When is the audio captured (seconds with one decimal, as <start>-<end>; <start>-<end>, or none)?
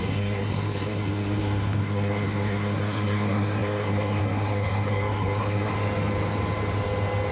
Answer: 5.7-7.3